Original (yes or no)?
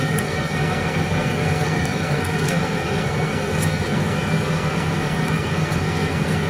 no